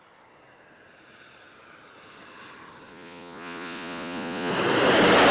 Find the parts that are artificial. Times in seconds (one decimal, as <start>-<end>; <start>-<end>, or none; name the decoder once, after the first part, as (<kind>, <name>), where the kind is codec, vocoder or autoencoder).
2.9-4.5 (vocoder, Vocos)